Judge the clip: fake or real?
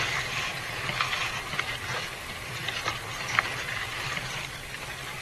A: real